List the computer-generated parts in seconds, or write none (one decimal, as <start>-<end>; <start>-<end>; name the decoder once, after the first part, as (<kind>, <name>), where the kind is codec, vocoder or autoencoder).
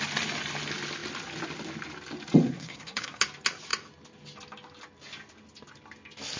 2.4-3.2 (codec, SNAC)